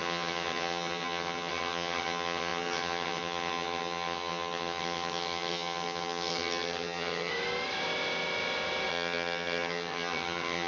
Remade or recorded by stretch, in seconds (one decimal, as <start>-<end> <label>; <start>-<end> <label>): 0.0-7.3 remade; 7.3-8.9 recorded; 8.9-10.7 remade